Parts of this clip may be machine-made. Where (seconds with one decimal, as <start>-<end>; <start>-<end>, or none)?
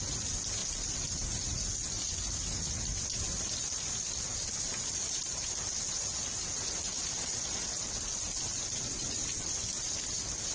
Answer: none